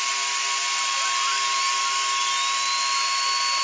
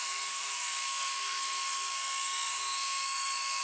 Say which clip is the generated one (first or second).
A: second